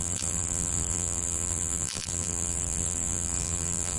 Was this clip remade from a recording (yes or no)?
yes